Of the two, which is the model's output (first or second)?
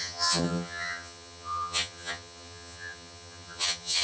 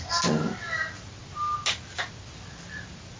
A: first